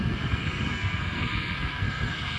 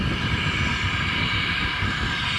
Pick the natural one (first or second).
second